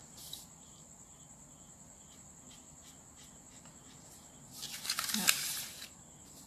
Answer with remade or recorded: recorded